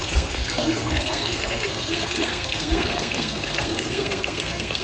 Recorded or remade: remade